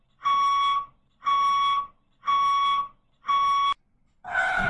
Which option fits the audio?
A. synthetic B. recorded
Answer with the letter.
B